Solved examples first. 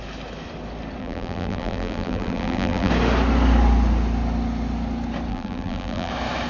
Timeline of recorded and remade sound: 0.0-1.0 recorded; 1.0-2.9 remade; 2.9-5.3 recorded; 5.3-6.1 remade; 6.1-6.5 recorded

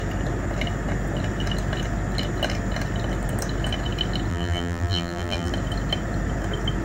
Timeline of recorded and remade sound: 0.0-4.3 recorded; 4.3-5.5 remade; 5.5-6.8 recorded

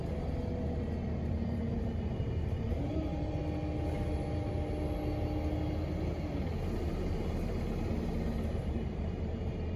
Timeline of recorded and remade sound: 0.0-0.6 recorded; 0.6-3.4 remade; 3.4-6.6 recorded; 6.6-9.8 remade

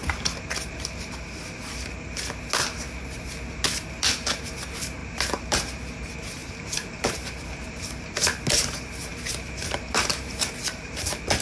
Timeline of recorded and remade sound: 0.0-5.0 recorded; 5.0-5.7 remade; 5.7-6.4 recorded; 6.4-7.8 remade; 7.8-9.1 recorded; 9.1-11.0 remade; 11.0-11.4 recorded

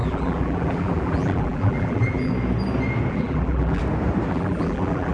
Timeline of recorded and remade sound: 0.0-2.3 remade; 2.3-3.1 recorded; 3.1-3.8 remade; 3.8-4.3 recorded; 4.3-5.1 remade

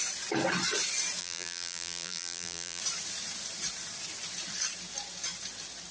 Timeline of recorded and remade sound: 0.0-1.2 recorded; 1.2-2.8 remade; 2.8-5.9 recorded